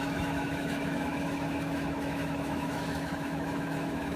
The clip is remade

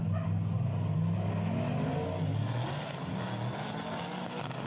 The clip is recorded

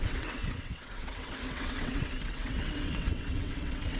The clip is remade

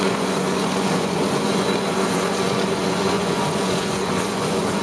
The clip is remade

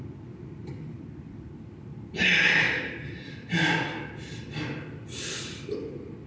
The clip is recorded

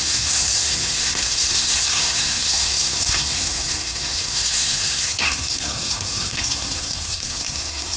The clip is remade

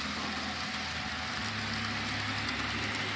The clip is recorded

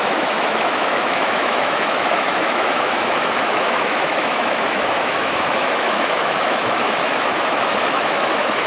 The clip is remade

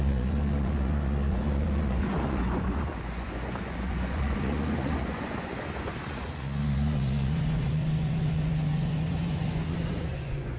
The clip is remade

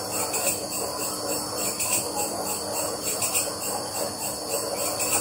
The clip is recorded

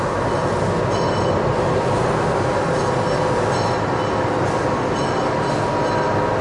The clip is recorded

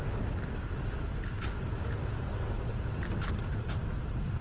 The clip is recorded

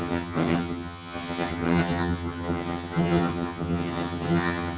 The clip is remade